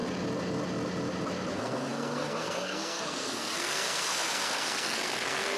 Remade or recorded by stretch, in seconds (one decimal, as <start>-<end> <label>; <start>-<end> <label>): 0.0-1.5 recorded; 1.5-5.6 remade